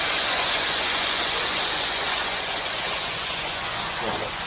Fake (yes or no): yes